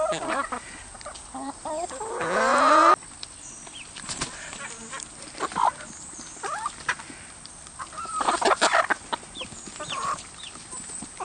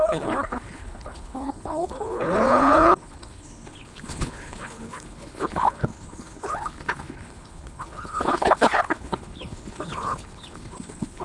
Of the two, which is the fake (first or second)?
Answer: second